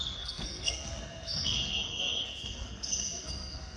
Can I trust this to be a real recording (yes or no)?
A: no